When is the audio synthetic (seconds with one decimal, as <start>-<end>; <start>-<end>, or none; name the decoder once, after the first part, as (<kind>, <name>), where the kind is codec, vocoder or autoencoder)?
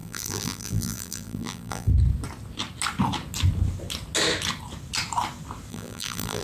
0.0-1.9 (vocoder, BigVGAN v2); 5.7-6.4